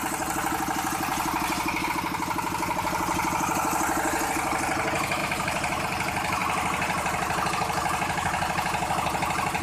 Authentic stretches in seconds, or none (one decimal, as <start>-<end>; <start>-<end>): 0.0-5.2; 5.8-9.6